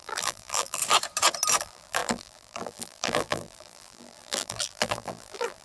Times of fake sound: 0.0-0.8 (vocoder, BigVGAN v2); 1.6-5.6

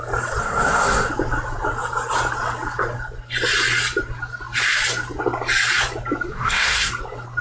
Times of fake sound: 0.4-1.1 (codec, SNAC); 6.3-6.9

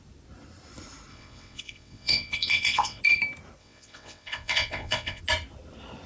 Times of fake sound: 1.1-3.0 (vocoder, WaveNeXt); 3.6-5.2

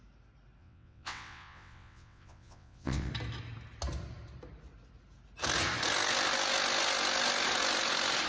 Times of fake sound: 0.6-3.1 (vocoder, WaveNeXt)

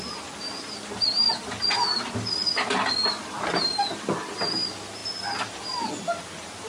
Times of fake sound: none

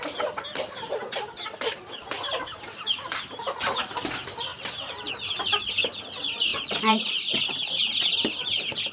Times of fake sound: 4.5-5.1 (vocoder, BigVGAN v2); 6.5-7.4

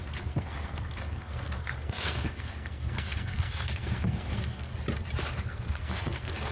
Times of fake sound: 0.0-4.7 (codec, SNAC); 5.4-6.5